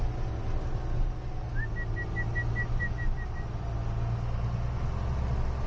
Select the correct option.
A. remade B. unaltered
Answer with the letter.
B